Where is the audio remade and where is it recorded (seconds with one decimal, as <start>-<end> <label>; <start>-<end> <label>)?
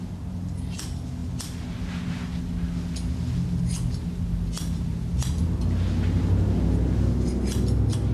0.0-8.1 recorded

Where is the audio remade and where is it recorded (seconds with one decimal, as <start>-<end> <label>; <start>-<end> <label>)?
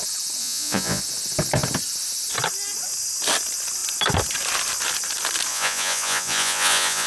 0.0-0.4 recorded; 0.4-1.0 remade; 1.0-5.5 recorded; 5.5-7.1 remade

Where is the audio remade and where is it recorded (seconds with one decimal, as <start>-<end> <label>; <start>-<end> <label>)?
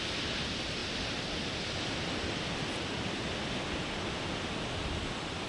0.0-5.5 recorded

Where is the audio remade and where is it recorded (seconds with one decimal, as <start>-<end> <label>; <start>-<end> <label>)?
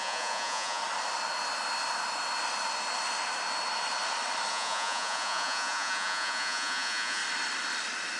0.0-0.8 remade; 0.8-4.5 recorded; 4.5-7.2 remade; 7.2-8.2 recorded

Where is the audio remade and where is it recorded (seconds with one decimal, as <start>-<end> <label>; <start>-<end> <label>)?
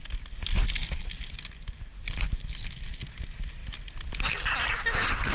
0.0-5.3 recorded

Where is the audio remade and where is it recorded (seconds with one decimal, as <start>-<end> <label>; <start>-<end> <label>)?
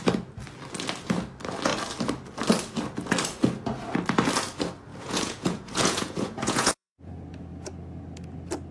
0.0-4.9 recorded; 4.9-7.1 remade; 7.1-8.7 recorded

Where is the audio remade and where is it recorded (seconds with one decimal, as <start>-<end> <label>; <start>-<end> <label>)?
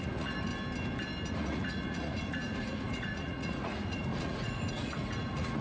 0.0-0.5 remade; 0.5-1.3 recorded; 1.3-5.6 remade